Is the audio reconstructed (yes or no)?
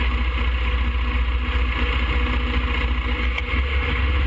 no